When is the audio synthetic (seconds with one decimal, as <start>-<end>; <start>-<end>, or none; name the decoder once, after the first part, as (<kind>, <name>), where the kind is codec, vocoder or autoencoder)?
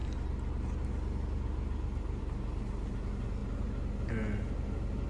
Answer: none